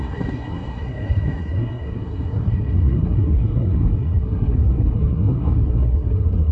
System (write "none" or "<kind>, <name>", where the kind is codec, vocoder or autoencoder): codec, SNAC